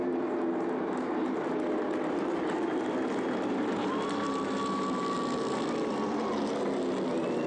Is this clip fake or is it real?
real